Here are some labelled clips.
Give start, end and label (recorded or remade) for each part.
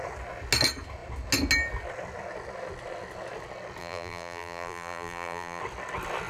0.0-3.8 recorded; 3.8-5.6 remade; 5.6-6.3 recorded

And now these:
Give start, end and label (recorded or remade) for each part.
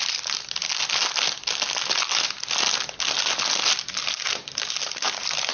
0.0-0.6 remade; 0.6-3.9 recorded; 3.9-5.5 remade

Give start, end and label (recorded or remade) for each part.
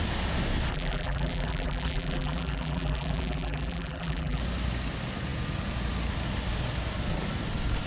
0.0-0.7 recorded; 0.7-4.4 remade; 4.4-7.9 recorded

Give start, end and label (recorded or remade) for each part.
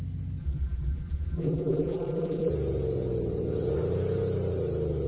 0.0-0.4 recorded; 0.4-2.5 remade; 2.5-5.1 recorded